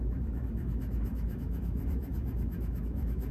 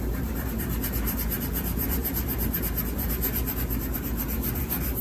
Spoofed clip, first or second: first